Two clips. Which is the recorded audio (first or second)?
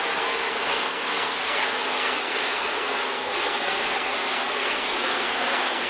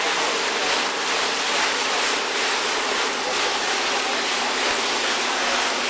second